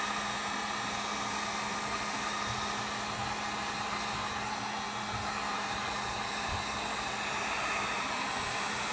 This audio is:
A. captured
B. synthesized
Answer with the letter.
A